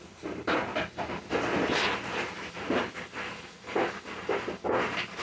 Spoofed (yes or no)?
no